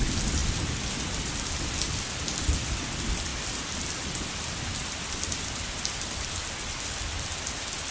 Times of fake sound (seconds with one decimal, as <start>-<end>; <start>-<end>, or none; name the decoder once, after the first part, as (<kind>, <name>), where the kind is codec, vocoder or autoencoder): 0.4-2.9 (vocoder, BigVGAN v2); 3.3-6.3